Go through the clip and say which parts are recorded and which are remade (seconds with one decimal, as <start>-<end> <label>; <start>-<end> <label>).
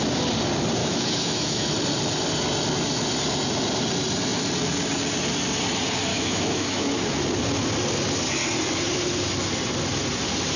0.0-0.8 recorded; 0.8-1.7 remade; 1.7-6.1 recorded; 6.1-7.0 remade; 7.0-10.6 recorded